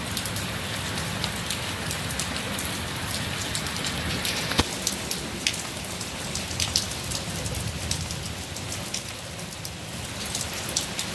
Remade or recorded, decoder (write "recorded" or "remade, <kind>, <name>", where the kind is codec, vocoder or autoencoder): recorded